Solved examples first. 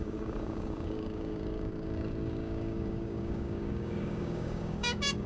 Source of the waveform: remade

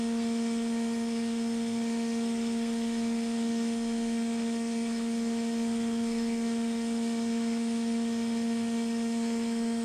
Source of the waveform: remade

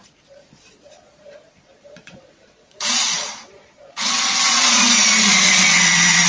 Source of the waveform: remade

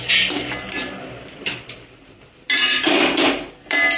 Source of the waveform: recorded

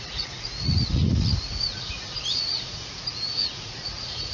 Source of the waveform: remade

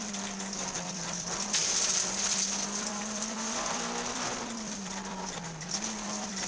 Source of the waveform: remade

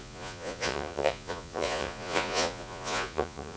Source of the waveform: remade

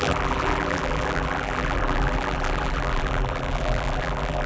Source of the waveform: remade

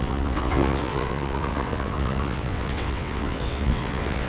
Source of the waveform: remade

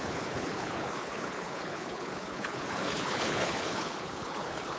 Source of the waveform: remade